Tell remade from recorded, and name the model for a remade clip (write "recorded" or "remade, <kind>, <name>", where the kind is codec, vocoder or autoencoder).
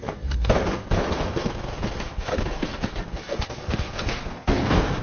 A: remade, codec, SNAC